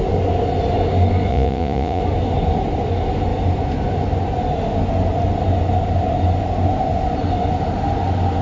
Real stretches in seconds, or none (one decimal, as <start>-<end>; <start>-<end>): 0.0-1.3; 2.0-8.4